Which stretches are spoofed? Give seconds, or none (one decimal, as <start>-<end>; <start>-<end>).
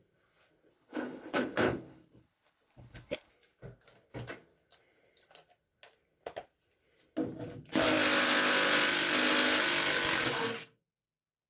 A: 0.7-3.3